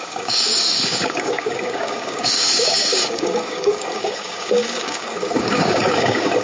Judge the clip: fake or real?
fake